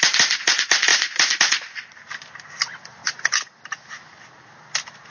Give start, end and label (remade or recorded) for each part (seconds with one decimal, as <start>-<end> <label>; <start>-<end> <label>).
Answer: 0.0-5.1 recorded